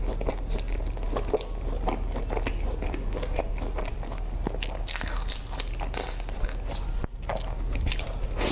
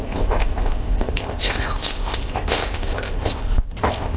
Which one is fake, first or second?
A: second